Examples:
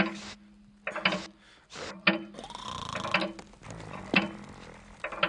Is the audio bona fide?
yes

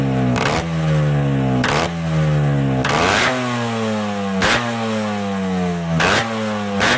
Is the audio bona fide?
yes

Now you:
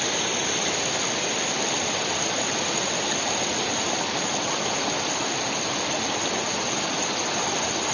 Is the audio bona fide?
yes